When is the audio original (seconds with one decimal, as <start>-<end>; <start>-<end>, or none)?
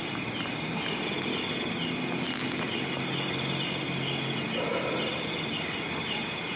0.0-6.6